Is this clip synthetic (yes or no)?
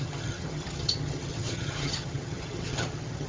yes